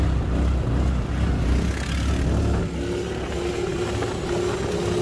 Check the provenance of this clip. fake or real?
real